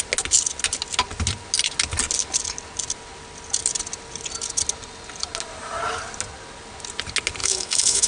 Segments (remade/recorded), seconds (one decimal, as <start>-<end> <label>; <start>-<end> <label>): 0.0-7.4 recorded; 7.4-8.1 remade